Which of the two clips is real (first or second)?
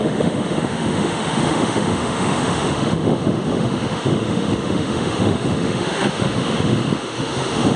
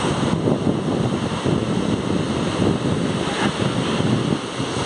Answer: second